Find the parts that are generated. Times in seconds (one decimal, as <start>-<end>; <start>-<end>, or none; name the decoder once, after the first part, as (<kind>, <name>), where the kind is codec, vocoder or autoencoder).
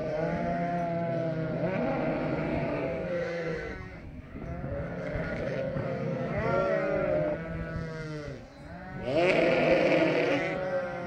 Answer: 2.5-6.8 (codec, DAC)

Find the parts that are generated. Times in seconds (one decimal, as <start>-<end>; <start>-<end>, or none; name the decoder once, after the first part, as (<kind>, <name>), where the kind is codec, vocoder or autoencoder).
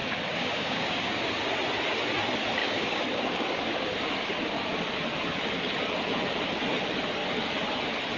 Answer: 0.0-1.3 (codec, DAC); 2.6-4.8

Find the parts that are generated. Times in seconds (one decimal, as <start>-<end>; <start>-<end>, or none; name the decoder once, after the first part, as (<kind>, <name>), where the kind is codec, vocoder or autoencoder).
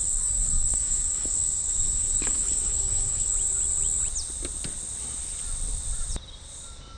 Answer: 0.0-3.3 (codec, DAC)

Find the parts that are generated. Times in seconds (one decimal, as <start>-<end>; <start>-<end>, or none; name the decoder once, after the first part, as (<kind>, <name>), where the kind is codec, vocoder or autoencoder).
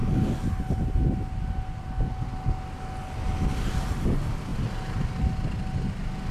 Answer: none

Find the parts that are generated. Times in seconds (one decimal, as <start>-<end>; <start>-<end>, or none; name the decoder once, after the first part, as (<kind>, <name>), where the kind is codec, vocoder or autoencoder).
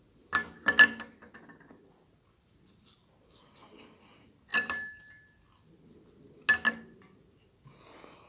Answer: none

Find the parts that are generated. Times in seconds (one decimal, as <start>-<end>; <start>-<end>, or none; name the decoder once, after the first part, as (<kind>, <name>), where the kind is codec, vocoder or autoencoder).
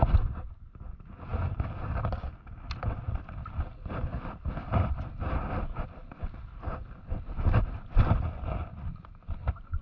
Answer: none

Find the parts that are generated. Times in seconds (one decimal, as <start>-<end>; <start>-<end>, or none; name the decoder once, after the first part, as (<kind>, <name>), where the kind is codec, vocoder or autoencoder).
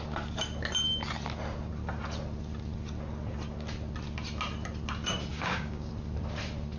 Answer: 5.3-5.9 (codec, DAC)